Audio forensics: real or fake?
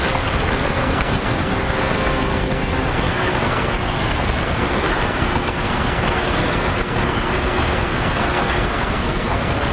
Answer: fake